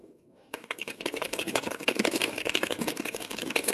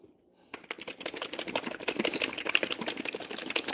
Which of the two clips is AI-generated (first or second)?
first